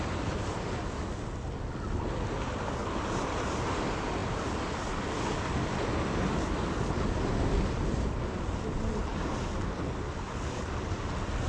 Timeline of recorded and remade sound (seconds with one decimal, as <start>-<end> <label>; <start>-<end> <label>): 0.0-11.5 recorded